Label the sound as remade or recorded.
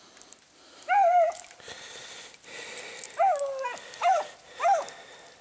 recorded